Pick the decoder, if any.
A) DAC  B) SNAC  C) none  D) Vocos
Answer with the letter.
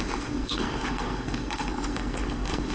B